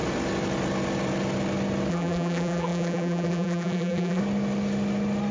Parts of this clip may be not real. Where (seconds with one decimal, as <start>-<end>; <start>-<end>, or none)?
1.9-4.2